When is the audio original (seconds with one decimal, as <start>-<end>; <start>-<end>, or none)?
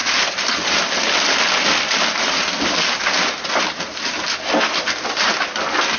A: 0.0-6.0